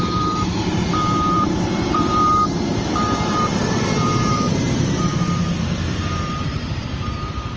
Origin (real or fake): fake